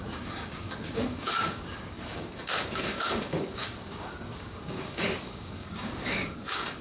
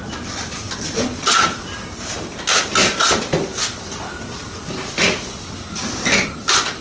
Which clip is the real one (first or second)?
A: second